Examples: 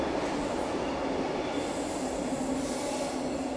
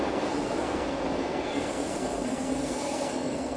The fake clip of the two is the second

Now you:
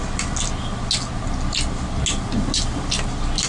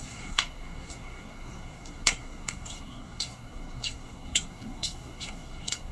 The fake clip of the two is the second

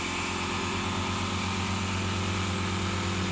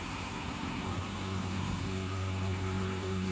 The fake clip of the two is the second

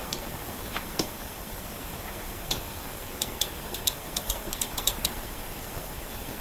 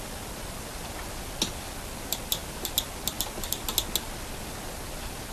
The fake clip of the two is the first